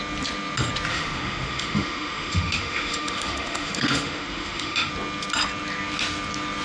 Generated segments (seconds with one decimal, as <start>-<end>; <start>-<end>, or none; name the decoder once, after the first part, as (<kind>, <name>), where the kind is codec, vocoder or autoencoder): 0.9-4.9 (autoencoder, DAC-VAE)